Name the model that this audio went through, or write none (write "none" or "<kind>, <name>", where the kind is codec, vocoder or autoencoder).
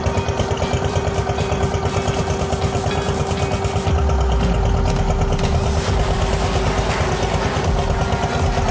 none